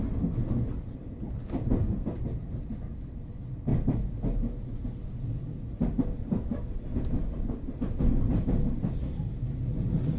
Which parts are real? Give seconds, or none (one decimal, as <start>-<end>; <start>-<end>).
0.0-10.2